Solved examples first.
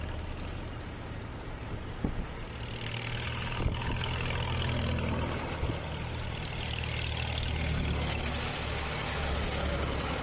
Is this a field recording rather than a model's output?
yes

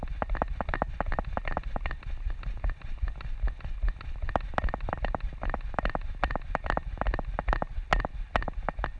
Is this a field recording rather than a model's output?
yes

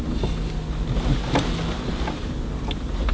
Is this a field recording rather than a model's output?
yes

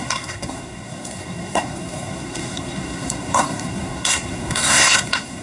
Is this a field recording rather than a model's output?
no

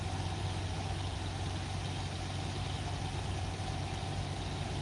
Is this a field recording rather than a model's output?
yes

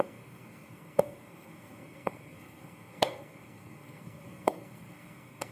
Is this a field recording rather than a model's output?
no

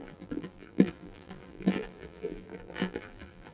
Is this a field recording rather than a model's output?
no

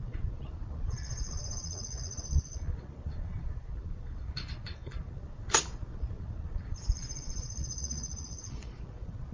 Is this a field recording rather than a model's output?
no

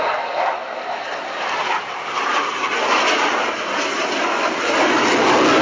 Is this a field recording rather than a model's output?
yes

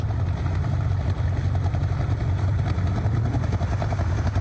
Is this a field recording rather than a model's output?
yes